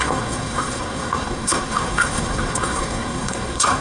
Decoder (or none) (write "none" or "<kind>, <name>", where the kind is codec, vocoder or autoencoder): codec, SNAC